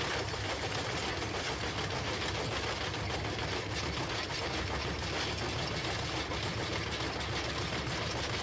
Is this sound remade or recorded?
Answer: recorded